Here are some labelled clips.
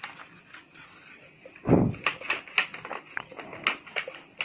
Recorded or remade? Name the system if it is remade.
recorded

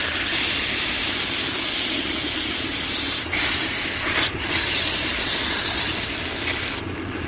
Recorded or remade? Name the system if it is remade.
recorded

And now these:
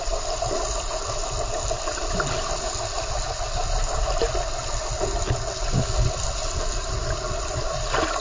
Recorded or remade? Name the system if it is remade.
recorded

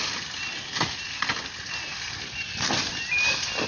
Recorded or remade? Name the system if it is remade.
recorded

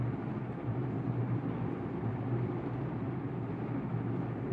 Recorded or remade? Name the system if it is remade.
remade, vocoder, BigVGAN v2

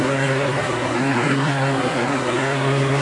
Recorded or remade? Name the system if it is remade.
remade, codec, SNAC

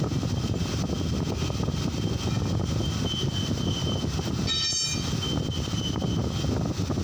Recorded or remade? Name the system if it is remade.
recorded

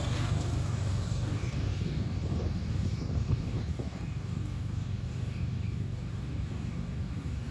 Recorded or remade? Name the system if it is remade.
remade, codec, DAC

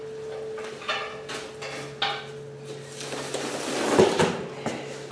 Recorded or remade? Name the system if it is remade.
recorded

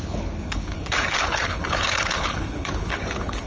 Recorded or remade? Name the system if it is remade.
remade, codec, HILCodec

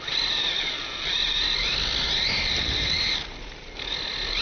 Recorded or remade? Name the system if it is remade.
recorded